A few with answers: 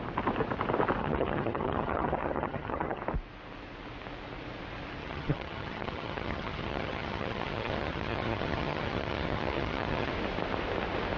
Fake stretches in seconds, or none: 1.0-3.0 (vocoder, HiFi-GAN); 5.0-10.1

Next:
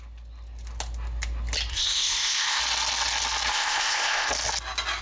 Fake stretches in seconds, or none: 1.7-2.6 (codec, ZipCodec); 3.5-4.3

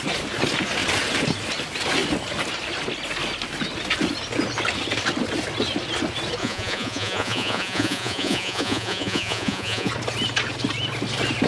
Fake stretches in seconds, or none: 6.4-9.9 (vocoder, Vocos)

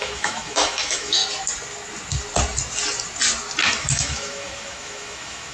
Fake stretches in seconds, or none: 0.0-1.2 (autoencoder, DAC-VAE); 3.8-5.5

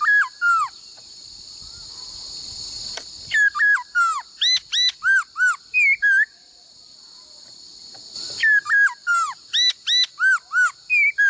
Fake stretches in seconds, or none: 9.0-9.5 (vocoder, BigVGAN v2)

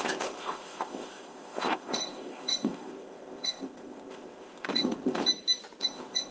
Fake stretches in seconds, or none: 0.0-5.2 (codec, ZipCodec); 5.8-6.3